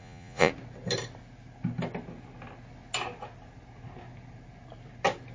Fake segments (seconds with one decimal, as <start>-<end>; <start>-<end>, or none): 0.0-0.5